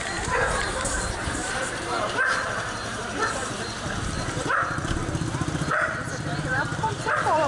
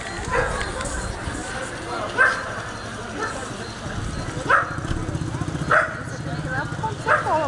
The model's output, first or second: first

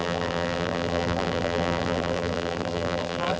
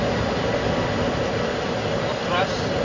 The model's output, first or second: first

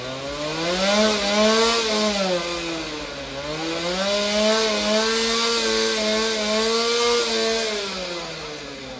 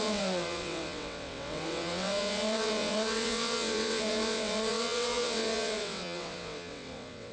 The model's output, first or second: second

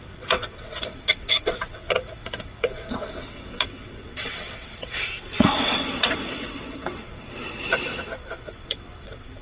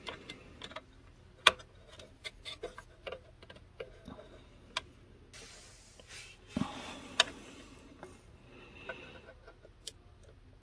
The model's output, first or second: first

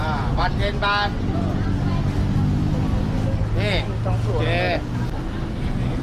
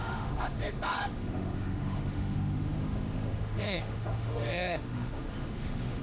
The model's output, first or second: second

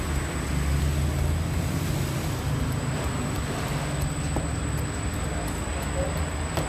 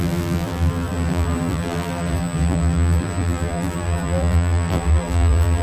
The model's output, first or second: second